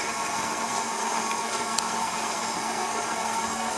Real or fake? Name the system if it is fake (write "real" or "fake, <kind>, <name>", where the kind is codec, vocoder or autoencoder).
fake, codec, SNAC